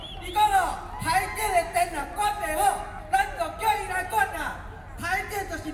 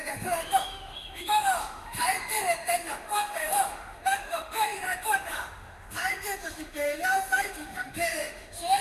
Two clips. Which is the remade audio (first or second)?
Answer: second